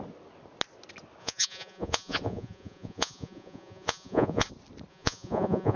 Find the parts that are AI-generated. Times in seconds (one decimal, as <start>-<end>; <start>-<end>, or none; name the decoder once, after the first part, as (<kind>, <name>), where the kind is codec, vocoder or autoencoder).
1.2-4.5 (vocoder, Vocos); 4.9-5.8